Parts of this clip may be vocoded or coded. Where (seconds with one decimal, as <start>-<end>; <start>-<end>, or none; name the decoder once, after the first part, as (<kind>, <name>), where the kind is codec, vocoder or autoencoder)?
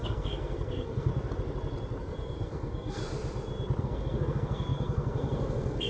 0.0-1.1 (codec, SNAC); 2.0-3.0; 3.8-5.9